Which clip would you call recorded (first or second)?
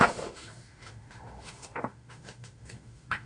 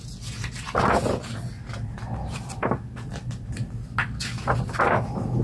second